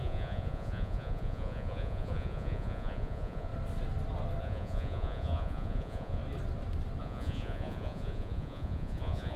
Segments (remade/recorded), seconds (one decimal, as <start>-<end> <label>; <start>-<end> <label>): 0.0-3.5 remade; 3.5-4.4 recorded; 4.4-6.2 remade; 6.2-7.0 recorded; 7.0-9.4 remade